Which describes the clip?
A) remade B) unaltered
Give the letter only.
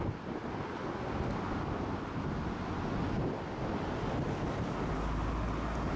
B